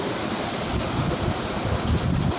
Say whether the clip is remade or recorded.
recorded